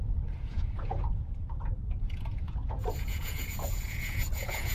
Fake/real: fake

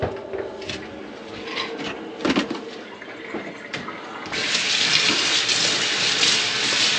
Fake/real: real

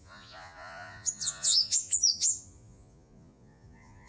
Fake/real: fake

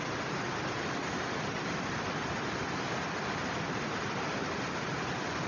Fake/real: real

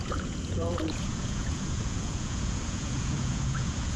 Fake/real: fake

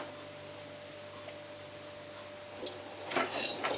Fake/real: real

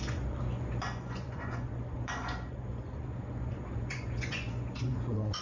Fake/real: fake